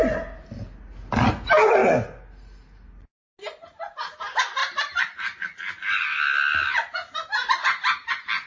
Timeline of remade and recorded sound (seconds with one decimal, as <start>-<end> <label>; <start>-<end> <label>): 0.0-8.5 recorded